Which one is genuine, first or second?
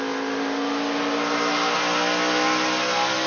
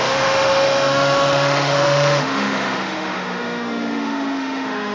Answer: first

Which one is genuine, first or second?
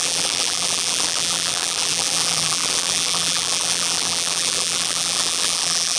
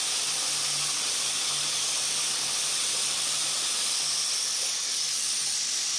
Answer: second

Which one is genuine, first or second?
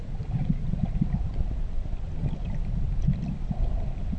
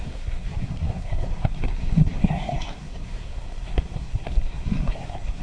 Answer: first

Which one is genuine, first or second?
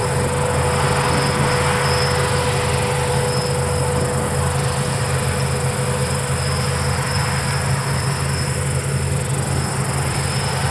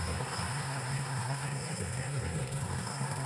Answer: first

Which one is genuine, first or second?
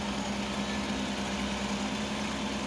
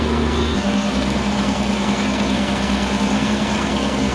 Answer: first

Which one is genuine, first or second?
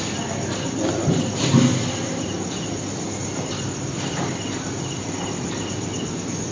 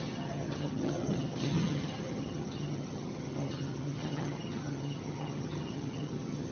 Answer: first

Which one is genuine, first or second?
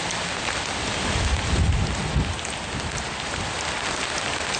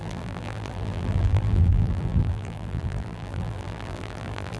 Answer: first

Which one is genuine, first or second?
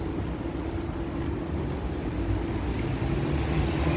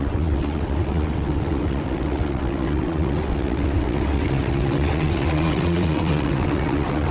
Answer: first